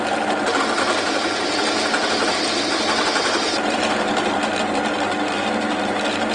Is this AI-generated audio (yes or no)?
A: no